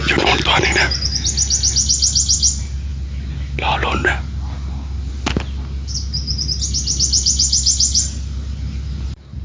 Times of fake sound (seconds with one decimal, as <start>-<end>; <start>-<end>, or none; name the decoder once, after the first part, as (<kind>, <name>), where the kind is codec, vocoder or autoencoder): none